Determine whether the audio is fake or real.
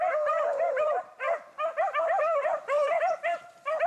fake